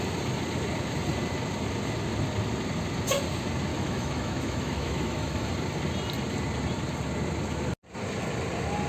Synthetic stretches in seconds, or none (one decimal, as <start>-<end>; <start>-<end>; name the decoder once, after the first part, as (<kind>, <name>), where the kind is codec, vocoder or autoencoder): 3.7-5.5 (autoencoder, DAC-VAE)